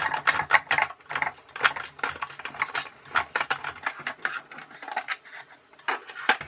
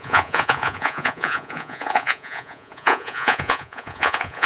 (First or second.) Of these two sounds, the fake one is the second